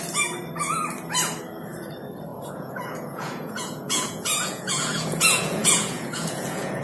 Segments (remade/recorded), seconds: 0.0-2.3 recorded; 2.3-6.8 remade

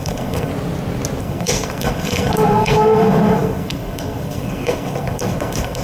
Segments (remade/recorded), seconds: 0.0-0.5 remade; 0.5-1.2 recorded; 1.2-5.8 remade

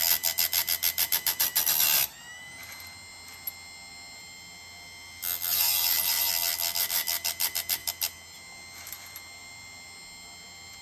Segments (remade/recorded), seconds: 0.0-5.5 recorded; 5.5-6.3 remade; 6.3-10.8 recorded

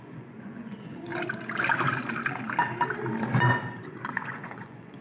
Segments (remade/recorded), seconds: 0.0-1.1 remade; 1.1-3.8 recorded; 3.8-5.0 remade

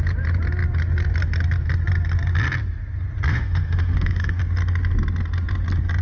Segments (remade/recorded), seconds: 0.0-3.3 recorded; 3.3-4.4 remade; 4.4-6.0 recorded